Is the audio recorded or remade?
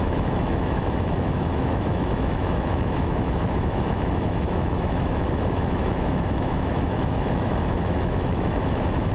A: remade